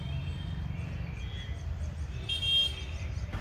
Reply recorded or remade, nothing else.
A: recorded